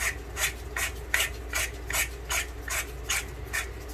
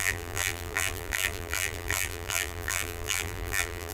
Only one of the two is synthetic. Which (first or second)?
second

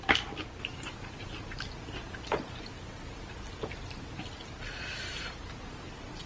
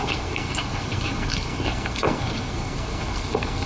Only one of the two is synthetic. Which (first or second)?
second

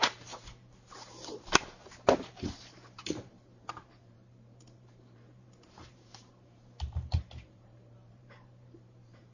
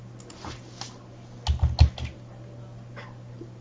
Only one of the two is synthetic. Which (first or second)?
first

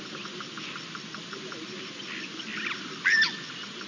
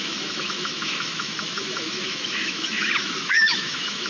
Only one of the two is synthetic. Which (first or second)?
second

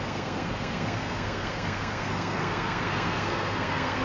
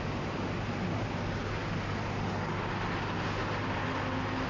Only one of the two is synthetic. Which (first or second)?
first